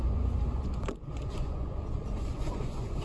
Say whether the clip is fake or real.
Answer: fake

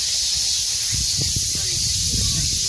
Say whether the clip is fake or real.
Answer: real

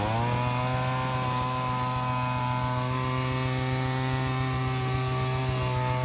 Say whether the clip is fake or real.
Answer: real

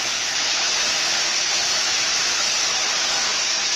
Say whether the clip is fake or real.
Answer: fake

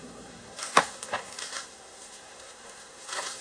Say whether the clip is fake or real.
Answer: fake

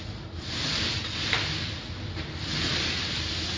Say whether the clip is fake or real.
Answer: real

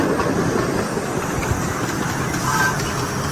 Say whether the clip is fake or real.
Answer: real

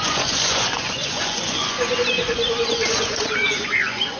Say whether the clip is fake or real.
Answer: fake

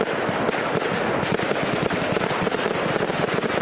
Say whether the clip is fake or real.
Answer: real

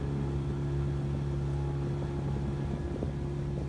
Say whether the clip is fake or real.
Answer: real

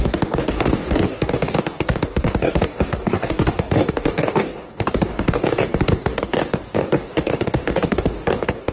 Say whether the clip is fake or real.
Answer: fake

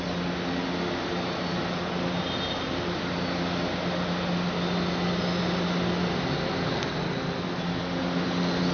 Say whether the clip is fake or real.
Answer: real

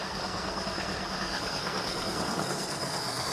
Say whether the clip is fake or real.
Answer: fake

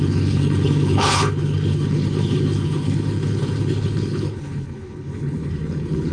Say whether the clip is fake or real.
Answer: fake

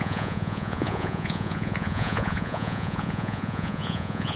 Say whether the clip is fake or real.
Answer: fake